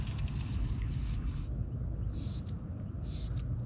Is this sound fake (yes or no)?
no